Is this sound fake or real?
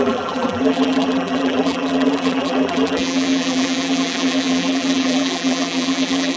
fake